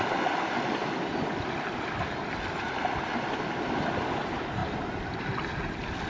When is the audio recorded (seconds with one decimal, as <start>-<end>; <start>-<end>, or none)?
0.0-6.1